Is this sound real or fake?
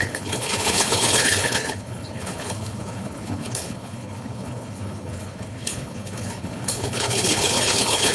fake